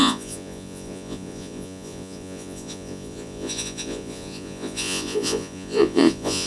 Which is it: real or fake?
fake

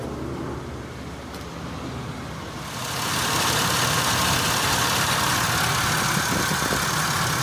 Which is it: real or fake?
real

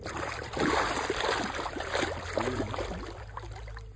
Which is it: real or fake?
real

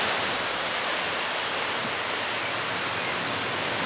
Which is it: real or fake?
real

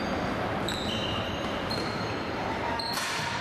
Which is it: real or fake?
fake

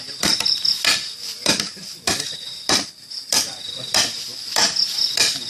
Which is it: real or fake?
fake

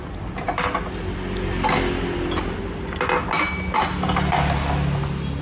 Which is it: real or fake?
real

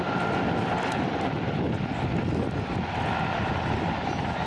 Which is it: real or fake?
real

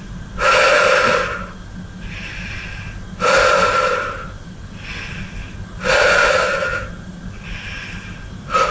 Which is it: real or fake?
real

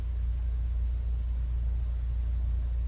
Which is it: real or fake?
real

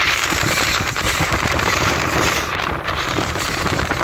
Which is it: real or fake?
fake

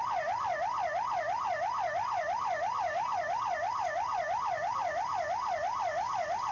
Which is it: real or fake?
real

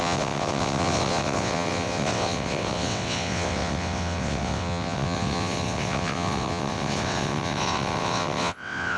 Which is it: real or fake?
fake